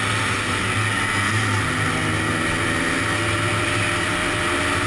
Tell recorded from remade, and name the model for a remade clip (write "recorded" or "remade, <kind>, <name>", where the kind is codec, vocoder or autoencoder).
recorded